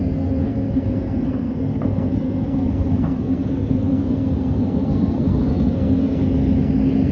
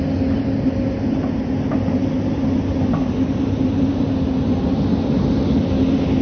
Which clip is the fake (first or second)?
first